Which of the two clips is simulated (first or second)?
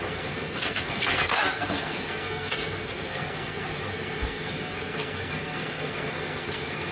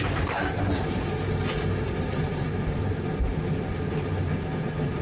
first